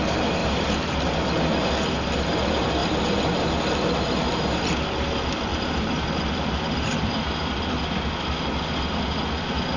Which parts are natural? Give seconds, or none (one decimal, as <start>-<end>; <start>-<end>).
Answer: 0.0-0.4; 1.1-2.8; 3.6-5.5; 6.1-9.8

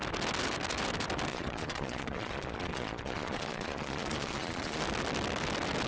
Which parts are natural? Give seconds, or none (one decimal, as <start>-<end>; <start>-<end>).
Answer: 0.0-1.3; 4.8-5.9

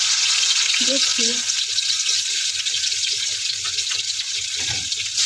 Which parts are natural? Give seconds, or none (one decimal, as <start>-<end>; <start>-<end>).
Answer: none